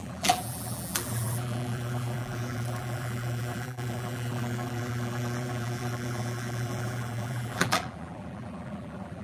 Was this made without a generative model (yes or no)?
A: no